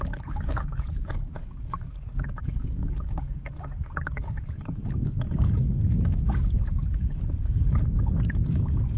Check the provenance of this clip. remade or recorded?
remade